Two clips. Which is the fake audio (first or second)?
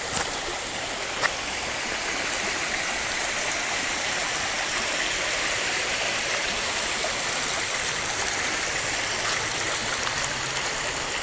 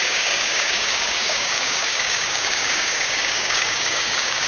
second